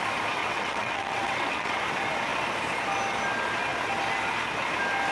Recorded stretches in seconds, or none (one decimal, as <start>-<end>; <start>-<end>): 0.0-0.4; 1.8-5.1

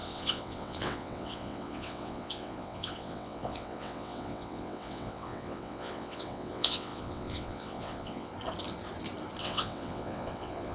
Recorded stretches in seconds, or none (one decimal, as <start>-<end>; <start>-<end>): 8.3-9.4

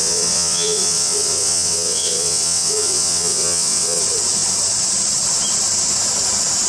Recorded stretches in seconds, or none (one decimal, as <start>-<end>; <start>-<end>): 4.0-6.7

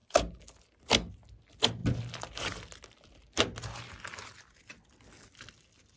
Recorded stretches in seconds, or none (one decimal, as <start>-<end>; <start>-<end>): 0.0-6.0

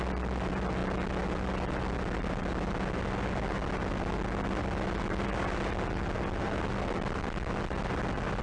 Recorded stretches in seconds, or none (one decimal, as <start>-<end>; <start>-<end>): 0.0-8.4

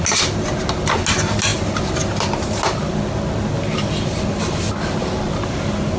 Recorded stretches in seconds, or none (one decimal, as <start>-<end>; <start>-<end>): 0.0-6.0